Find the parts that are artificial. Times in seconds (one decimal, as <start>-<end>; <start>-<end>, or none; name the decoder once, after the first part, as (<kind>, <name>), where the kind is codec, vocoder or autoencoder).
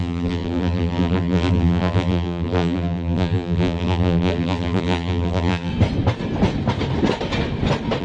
0.0-5.7 (vocoder, BigVGAN v2)